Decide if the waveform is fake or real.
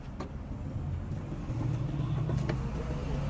real